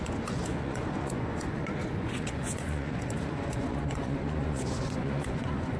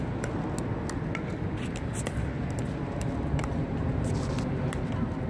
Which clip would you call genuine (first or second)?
second